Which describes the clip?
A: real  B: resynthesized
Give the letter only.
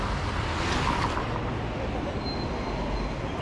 A